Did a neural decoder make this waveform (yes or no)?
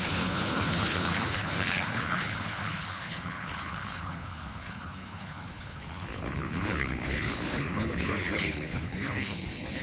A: yes